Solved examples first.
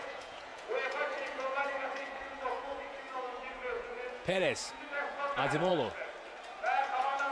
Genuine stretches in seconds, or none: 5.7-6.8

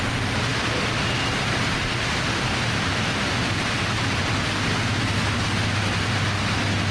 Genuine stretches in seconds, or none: 0.0-4.9; 5.9-6.9

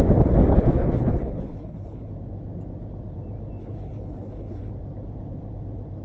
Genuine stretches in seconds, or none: 0.0-0.5; 2.1-3.6; 4.7-6.0

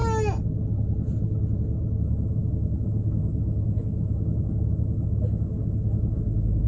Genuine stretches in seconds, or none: 0.0-2.0

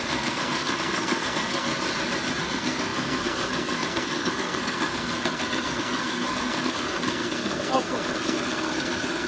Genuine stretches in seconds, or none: 1.7-2.4

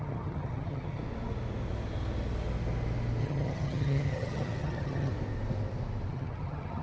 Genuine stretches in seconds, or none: 1.0-3.2; 5.1-6.1

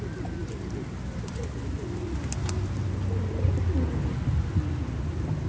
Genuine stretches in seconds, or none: 0.0-5.5